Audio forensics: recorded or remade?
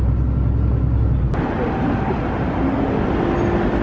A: recorded